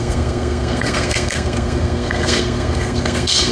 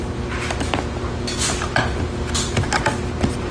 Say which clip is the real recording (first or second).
second